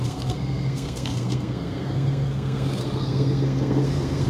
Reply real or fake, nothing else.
fake